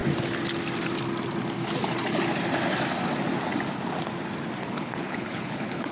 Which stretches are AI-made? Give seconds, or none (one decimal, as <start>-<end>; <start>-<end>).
4.6-5.9